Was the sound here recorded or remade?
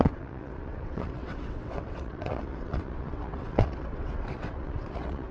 remade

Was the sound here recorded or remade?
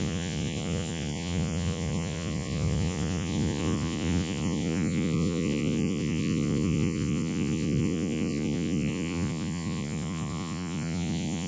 remade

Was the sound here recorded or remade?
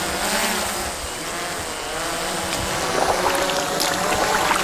recorded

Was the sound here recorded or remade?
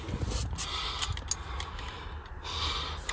recorded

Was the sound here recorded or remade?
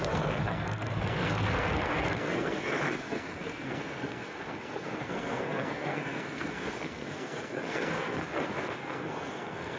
remade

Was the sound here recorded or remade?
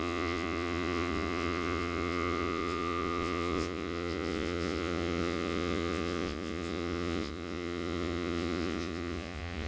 remade